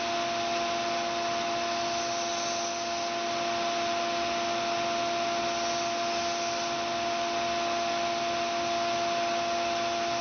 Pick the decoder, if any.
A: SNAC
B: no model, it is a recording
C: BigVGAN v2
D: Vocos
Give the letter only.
B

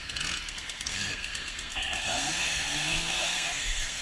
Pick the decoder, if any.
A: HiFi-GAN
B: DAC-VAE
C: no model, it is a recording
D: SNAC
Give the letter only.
D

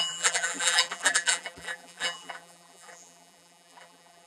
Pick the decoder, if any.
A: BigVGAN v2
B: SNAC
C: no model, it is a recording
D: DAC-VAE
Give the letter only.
A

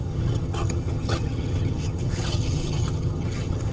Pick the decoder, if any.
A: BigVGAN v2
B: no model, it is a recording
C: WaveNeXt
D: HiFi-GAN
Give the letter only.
D